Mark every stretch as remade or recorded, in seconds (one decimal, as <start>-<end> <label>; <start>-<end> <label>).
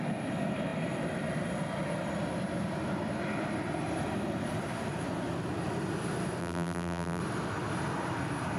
0.0-6.4 recorded; 6.4-7.2 remade; 7.2-8.6 recorded